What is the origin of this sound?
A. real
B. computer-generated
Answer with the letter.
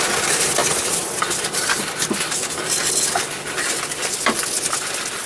A